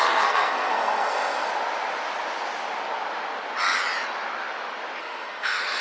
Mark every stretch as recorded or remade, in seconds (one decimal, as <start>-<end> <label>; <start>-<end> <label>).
0.0-1.5 remade; 1.5-5.0 recorded; 5.0-5.8 remade